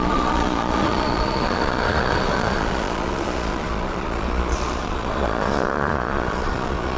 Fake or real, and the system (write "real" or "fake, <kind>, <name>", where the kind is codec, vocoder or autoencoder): fake, vocoder, Vocos